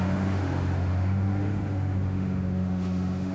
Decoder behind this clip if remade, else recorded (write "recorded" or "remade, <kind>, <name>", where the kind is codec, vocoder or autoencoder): remade, autoencoder, DAC-VAE